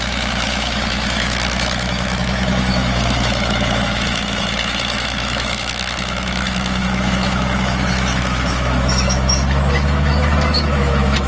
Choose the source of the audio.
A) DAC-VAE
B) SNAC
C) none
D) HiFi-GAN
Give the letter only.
A